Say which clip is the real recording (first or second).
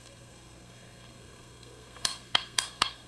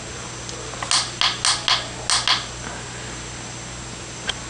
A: second